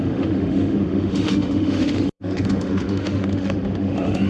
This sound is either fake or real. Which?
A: fake